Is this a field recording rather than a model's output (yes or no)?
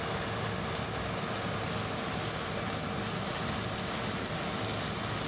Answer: yes